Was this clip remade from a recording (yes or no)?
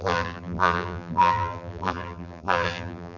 yes